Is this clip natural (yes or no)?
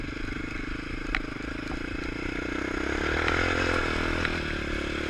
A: yes